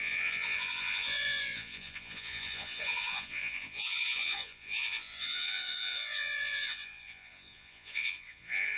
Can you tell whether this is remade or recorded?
remade